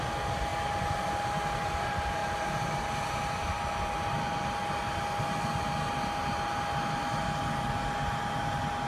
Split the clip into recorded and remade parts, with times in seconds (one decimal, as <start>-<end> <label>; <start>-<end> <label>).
0.0-8.9 recorded